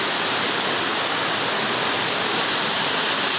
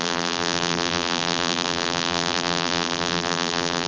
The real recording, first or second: first